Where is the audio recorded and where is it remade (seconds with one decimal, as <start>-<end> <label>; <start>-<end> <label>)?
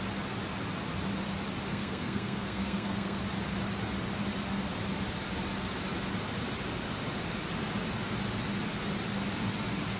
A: 0.0-1.7 recorded; 1.7-3.2 remade; 3.2-10.0 recorded